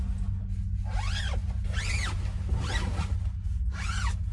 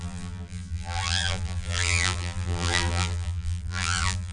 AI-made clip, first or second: second